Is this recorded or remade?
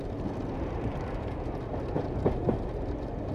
recorded